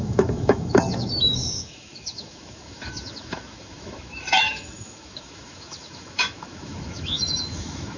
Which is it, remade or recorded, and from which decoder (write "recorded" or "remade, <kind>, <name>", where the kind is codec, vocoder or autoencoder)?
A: remade, autoencoder, DAC-VAE